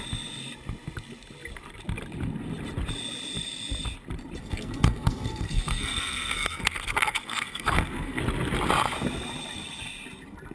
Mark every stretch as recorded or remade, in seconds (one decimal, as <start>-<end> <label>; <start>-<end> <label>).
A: 0.0-4.4 recorded; 4.4-8.2 remade; 8.2-10.5 recorded